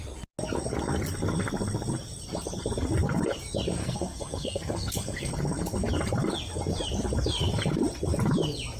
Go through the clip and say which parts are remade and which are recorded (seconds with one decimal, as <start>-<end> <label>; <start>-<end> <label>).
0.0-3.8 recorded; 3.8-5.3 remade; 5.3-8.8 recorded